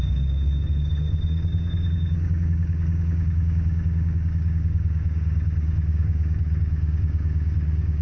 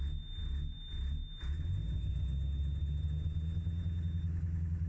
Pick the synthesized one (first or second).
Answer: first